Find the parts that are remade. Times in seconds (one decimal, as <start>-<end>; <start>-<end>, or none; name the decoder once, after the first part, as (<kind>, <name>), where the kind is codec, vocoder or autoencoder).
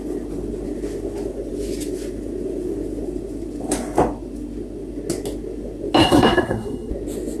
6.0-6.9 (codec, SNAC)